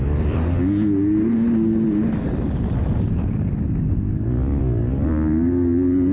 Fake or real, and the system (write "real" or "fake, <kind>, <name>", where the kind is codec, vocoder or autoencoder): real